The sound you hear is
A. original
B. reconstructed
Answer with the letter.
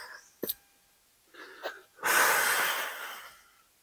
A